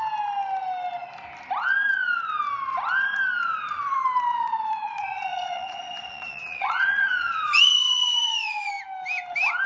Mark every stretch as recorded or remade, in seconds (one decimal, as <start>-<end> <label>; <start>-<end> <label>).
0.0-4.3 recorded; 4.3-8.7 remade; 8.7-9.7 recorded